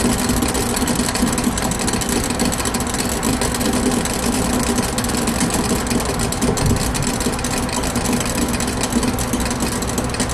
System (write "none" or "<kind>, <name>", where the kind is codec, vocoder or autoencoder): none